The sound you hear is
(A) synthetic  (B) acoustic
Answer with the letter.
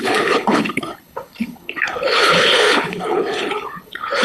A